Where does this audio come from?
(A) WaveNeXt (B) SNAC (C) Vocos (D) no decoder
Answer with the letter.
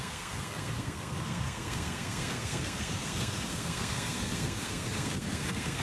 B